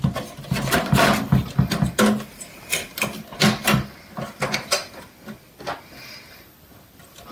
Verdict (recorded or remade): recorded